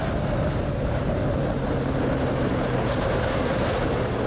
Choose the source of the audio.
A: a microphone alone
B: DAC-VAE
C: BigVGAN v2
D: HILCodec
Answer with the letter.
A